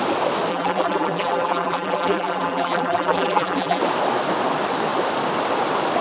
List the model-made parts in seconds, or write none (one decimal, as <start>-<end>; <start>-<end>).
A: 0.5-3.8